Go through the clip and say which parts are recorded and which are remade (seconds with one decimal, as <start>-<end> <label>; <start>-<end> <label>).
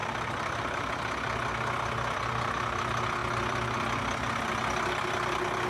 0.0-0.9 remade; 0.9-5.7 recorded